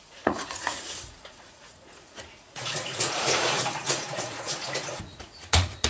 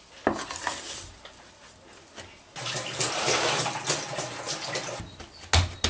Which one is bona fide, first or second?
second